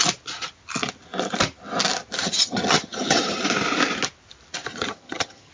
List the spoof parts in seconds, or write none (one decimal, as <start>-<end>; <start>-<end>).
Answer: 2.2-3.4; 4.7-5.5